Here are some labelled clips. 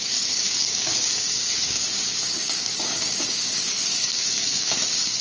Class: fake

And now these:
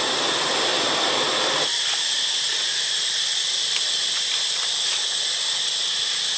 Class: real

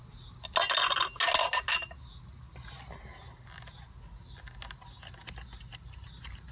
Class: real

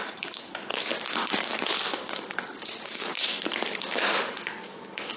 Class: fake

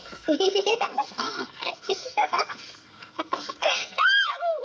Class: fake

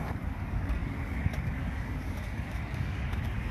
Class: fake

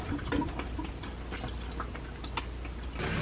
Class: real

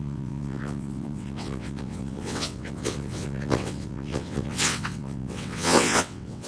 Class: fake